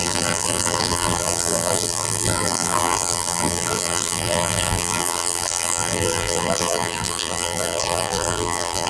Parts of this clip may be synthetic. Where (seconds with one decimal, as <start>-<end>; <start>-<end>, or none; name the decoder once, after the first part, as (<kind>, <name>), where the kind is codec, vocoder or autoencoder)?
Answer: 0.0-8.9 (vocoder, BigVGAN v2)